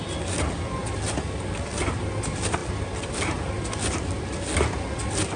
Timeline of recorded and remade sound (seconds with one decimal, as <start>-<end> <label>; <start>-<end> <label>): 0.0-5.4 recorded